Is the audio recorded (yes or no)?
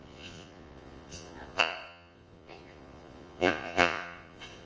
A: no